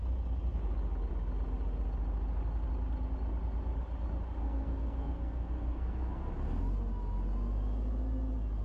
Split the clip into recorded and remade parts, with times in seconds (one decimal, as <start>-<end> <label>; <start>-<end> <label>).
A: 0.0-4.4 recorded; 4.4-6.3 remade; 6.3-8.6 recorded